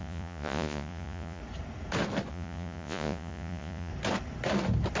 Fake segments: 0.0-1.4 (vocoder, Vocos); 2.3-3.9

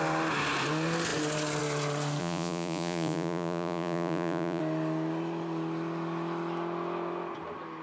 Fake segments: 2.2-4.6 (vocoder, Vocos)

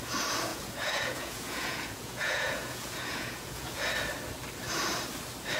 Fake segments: 0.5-3.9 (vocoder, Vocos)

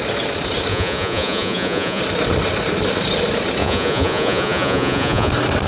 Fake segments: 0.7-2.0 (vocoder, Vocos); 3.6-5.3

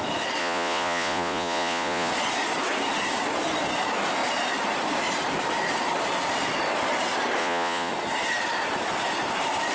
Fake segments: 0.4-2.1 (vocoder, Vocos); 7.4-7.9